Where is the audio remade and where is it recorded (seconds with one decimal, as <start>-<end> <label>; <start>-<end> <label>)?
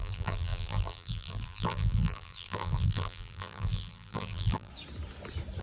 0.0-4.7 remade; 4.7-5.6 recorded